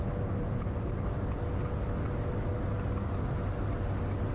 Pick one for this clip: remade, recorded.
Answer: recorded